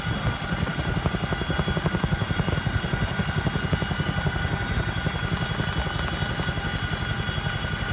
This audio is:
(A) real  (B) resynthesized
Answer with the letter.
A